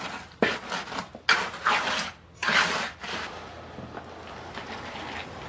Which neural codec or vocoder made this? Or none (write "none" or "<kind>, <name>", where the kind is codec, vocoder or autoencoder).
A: none